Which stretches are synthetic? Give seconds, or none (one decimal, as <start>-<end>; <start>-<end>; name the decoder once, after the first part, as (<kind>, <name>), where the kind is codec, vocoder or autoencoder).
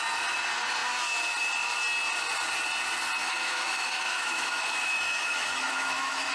3.2-6.3 (autoencoder, DAC-VAE)